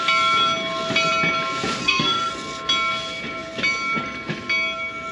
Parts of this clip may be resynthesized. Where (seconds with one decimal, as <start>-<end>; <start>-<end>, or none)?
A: 1.8-2.3